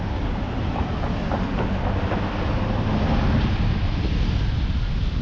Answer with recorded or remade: recorded